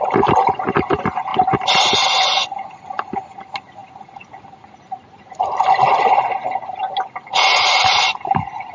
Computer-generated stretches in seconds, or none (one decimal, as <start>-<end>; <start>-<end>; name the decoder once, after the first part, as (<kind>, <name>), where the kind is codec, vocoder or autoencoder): none